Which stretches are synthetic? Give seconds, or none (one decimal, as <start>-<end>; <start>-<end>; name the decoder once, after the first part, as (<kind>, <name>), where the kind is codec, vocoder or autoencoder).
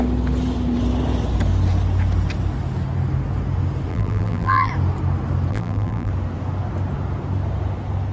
3.9-4.7 (vocoder, BigVGAN v2); 5.5-6.1